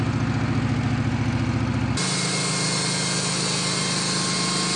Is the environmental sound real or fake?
real